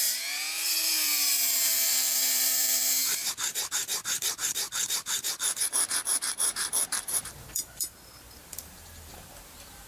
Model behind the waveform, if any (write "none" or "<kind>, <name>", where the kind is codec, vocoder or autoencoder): vocoder, BigVGAN v2